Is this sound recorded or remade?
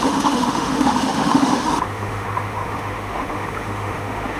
remade